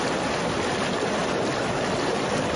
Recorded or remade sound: recorded